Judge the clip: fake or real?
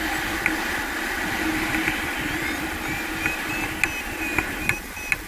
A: real